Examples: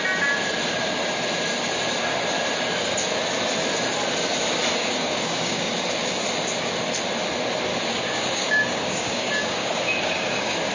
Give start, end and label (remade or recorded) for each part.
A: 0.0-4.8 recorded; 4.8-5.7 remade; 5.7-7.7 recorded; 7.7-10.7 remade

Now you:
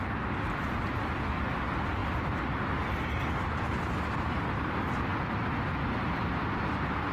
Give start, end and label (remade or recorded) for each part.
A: 0.0-7.1 recorded